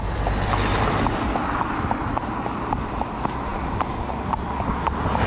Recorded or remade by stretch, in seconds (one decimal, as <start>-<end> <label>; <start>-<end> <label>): 0.0-5.3 recorded

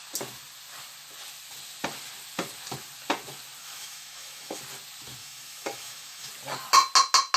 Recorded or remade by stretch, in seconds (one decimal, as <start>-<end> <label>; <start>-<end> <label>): 0.0-3.6 recorded; 3.6-4.6 remade; 4.6-5.2 recorded; 5.2-6.3 remade; 6.3-7.4 recorded

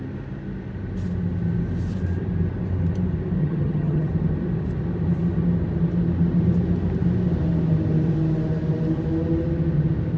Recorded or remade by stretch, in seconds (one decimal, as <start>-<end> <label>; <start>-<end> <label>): 0.0-3.4 recorded; 3.4-4.1 remade; 4.1-10.2 recorded

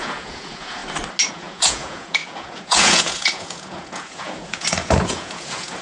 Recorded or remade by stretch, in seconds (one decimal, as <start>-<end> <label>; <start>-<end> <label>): 0.0-0.8 remade; 0.8-1.3 recorded; 1.3-5.8 remade

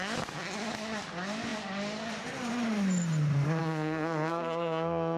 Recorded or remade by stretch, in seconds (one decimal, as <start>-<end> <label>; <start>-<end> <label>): 0.0-3.6 recorded; 3.6-5.2 remade

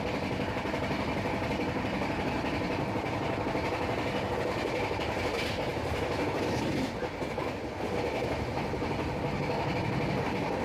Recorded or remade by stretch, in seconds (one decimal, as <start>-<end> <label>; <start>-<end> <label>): 0.0-10.6 recorded